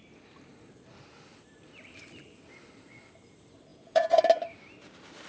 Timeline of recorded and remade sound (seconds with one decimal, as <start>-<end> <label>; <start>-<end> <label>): 0.0-3.7 recorded; 3.7-4.2 remade; 4.2-5.3 recorded